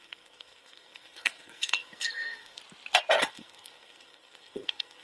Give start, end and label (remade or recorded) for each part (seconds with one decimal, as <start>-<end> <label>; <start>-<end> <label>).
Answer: 0.0-2.6 remade; 2.6-3.3 recorded; 3.3-5.0 remade